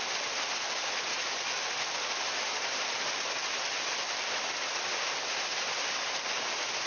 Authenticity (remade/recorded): recorded